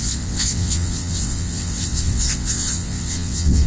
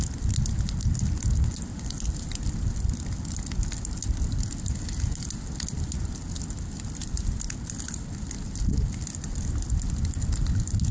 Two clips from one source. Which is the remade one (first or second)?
first